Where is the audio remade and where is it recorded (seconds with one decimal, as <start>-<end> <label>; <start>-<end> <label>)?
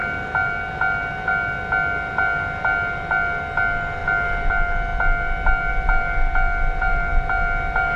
0.0-8.0 recorded